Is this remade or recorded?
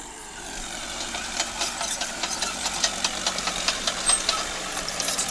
remade